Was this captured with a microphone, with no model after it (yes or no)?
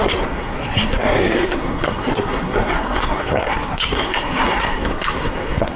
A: no